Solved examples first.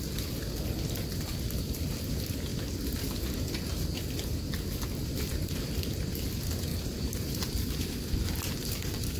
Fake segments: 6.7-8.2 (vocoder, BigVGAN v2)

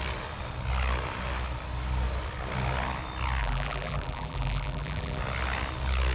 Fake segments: 3.4-5.2 (vocoder, BigVGAN v2)